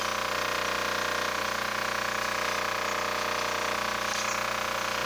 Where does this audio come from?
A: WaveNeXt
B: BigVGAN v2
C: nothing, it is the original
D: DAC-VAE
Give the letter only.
C